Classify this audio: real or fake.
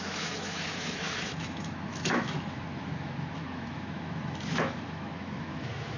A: fake